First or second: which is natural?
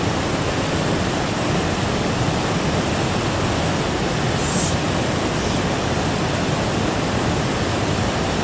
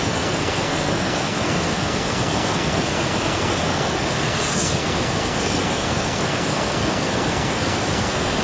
first